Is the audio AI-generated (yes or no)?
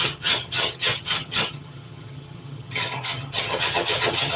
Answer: yes